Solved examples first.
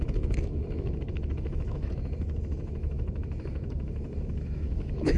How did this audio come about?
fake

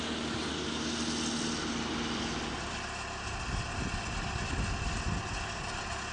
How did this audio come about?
real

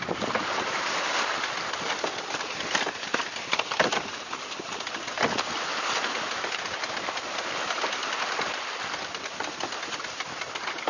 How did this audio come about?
real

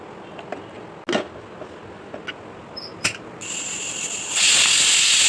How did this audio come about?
real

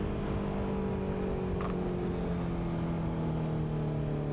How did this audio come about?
real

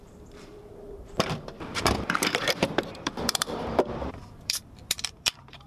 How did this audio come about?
fake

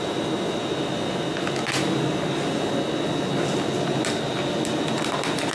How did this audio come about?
real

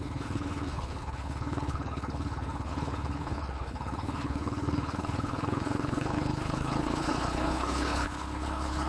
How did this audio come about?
fake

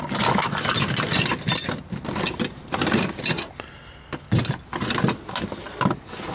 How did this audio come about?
real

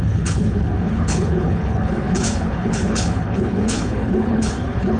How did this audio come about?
fake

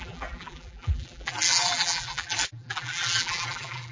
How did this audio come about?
fake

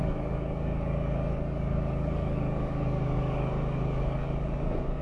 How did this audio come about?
fake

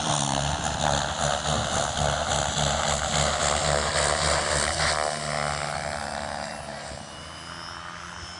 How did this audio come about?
real